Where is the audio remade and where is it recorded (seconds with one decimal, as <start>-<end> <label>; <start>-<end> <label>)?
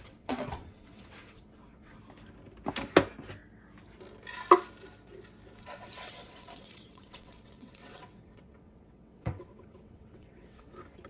0.0-2.0 remade; 2.0-5.6 recorded; 5.6-11.1 remade